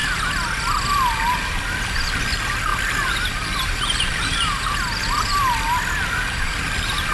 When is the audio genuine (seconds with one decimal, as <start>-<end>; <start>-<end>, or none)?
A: 0.0-7.1